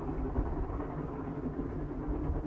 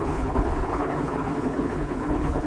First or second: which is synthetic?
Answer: second